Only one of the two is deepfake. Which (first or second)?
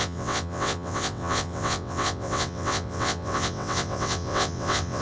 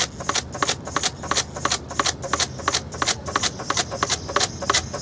first